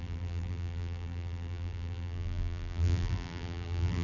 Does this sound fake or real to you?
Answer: fake